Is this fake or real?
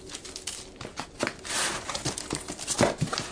real